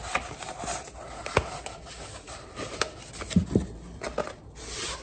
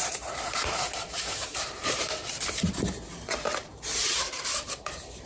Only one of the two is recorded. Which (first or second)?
first